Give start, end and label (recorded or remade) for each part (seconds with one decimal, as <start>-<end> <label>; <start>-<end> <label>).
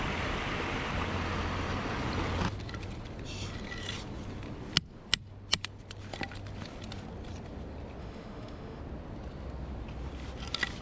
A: 0.0-8.0 recorded; 8.0-8.8 remade; 8.8-10.8 recorded